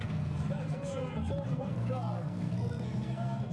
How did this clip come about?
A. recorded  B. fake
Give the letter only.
B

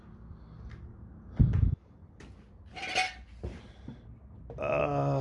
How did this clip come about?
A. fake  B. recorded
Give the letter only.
B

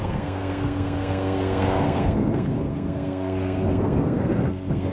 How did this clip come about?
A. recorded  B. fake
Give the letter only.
B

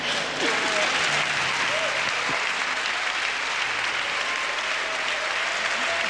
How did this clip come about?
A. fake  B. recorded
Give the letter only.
B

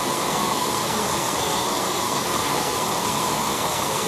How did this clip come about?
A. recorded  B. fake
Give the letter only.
B